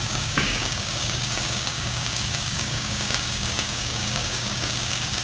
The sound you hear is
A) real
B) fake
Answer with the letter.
B